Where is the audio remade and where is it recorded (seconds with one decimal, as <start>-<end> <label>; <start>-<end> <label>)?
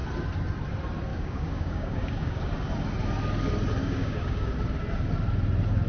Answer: 0.0-1.1 recorded; 1.1-2.5 remade; 2.5-3.8 recorded; 3.8-4.5 remade; 4.5-5.9 recorded